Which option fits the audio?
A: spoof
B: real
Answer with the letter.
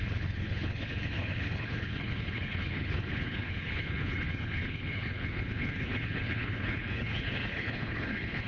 A